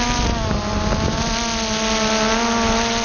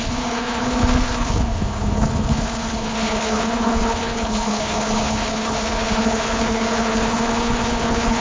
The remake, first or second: second